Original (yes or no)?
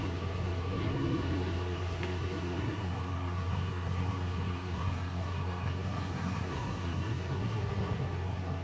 no